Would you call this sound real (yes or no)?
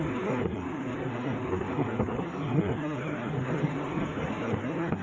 no